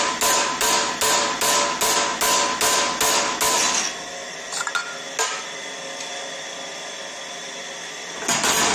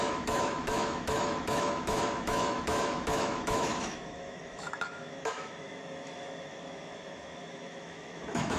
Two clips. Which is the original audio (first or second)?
first